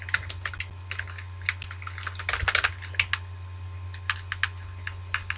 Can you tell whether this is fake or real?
real